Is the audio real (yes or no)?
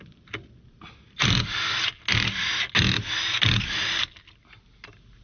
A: yes